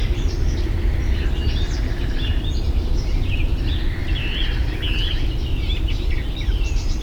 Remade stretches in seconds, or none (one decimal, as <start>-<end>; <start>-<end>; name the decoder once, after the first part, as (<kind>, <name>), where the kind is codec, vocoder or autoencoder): 0.0-4.0 (vocoder, BigVGAN v2); 5.5-7.0